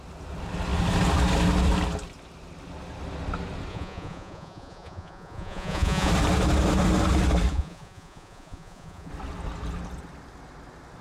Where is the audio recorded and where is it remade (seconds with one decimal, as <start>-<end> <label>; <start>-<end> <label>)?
0.0-3.7 recorded; 3.7-6.1 remade; 6.1-7.5 recorded; 7.5-9.1 remade; 9.1-11.0 recorded